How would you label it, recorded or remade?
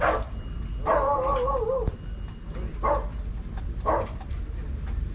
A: recorded